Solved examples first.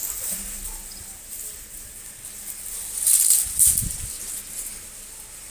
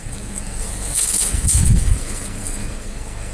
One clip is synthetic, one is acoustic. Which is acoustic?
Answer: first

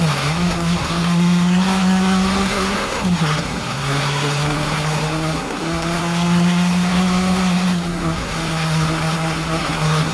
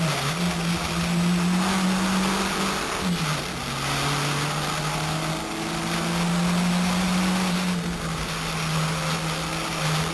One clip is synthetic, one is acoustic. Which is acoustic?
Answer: second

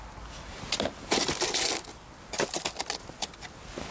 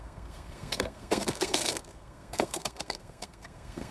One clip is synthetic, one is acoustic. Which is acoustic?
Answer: first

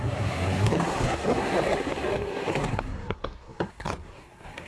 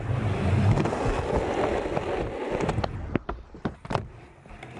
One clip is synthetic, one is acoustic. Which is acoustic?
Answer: second